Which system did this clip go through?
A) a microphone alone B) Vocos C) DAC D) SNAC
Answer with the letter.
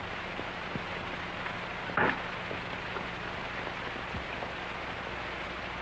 A